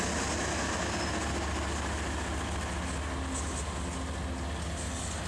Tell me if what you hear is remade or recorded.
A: recorded